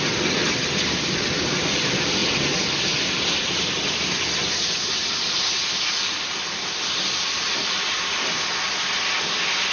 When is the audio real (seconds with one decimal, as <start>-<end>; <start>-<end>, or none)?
0.0-9.7